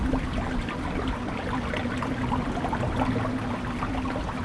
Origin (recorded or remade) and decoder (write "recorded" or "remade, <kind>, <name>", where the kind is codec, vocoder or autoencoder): recorded